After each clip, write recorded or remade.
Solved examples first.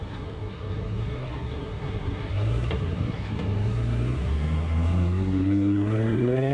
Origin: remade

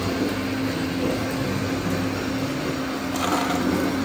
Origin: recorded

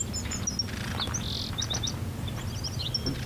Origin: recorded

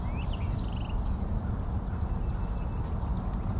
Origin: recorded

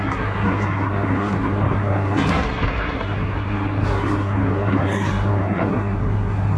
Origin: remade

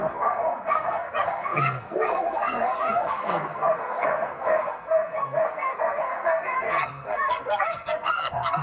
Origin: remade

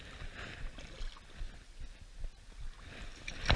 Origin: recorded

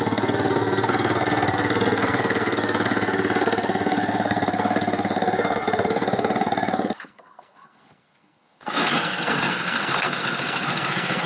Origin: remade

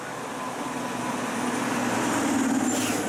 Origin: recorded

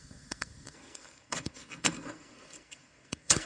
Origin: remade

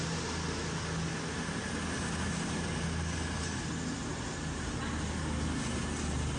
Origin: recorded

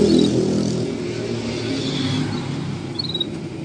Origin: recorded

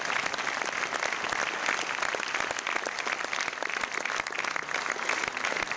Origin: recorded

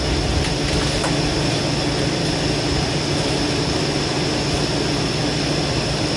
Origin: recorded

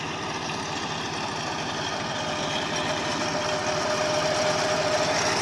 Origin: recorded